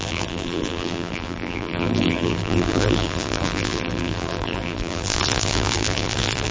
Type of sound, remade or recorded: remade